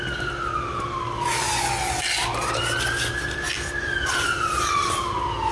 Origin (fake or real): real